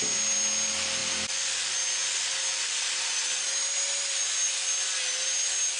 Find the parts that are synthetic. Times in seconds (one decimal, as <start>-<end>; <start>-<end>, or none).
1.0-1.6